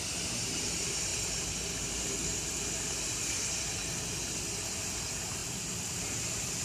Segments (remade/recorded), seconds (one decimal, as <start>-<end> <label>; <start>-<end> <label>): 0.0-6.6 recorded